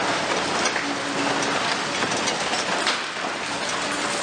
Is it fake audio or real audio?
real